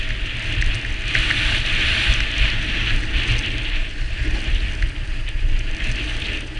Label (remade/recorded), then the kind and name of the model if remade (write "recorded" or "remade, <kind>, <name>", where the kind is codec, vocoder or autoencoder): recorded